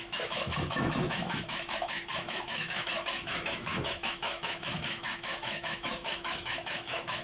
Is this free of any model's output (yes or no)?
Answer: no